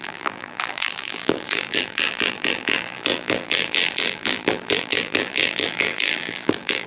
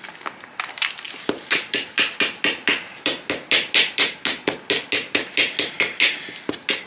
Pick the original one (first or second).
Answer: second